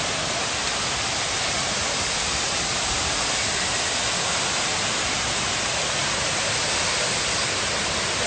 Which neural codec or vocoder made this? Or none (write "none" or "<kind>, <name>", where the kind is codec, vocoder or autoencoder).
none